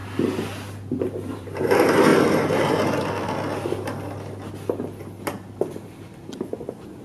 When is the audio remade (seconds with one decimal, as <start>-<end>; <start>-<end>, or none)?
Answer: 1.0-2.1; 6.3-7.0